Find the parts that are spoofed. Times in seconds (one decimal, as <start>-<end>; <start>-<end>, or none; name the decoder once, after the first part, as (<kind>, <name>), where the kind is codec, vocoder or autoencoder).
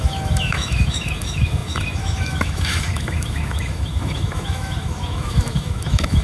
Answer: 0.0-6.2 (autoencoder, DAC-VAE)